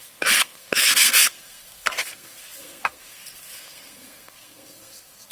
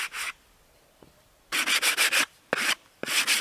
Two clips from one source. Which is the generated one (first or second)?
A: first